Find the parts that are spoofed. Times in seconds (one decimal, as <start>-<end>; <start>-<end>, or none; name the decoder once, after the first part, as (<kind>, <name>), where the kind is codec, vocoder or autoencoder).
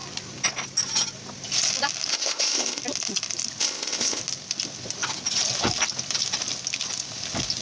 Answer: 2.1-2.8 (codec, ZipCodec); 3.6-4.2